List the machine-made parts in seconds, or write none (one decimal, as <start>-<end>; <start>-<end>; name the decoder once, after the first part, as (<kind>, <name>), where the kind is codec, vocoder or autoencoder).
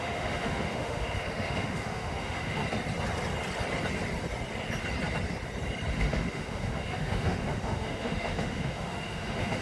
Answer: 0.0-2.6 (autoencoder, DAC-VAE); 5.9-9.6